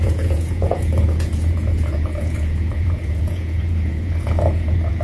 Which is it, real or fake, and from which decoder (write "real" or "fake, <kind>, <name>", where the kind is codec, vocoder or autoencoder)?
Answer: fake, vocoder, Vocos